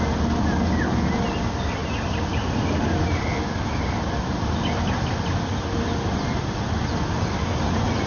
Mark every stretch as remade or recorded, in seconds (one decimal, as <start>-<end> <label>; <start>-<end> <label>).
0.0-8.1 recorded